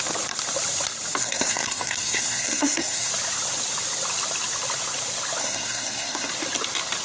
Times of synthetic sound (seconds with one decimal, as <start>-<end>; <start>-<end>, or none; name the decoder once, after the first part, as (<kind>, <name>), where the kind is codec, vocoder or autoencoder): 1.2-3.1 (codec, SNAC); 5.4-6.3